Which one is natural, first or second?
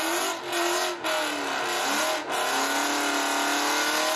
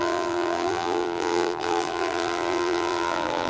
first